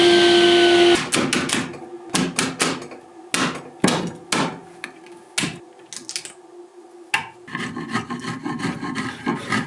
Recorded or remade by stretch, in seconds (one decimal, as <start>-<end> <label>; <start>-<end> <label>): 0.0-9.7 recorded